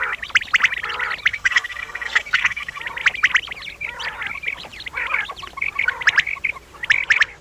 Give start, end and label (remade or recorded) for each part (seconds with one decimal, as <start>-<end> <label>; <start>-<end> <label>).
0.0-1.3 recorded; 1.3-2.8 remade; 2.8-7.4 recorded